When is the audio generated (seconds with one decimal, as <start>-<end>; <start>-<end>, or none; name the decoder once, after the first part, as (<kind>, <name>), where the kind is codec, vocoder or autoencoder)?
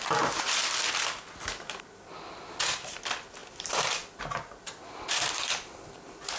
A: none